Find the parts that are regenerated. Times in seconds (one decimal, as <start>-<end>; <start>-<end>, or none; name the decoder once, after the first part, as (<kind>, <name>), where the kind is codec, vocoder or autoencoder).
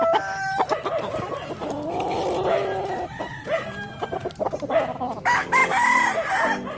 none